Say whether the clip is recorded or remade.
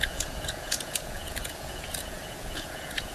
remade